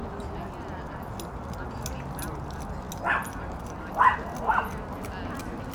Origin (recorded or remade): recorded